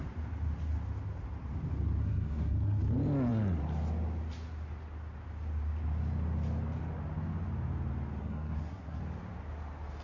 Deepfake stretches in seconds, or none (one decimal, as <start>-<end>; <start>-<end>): 2.0-2.8; 8.2-9.0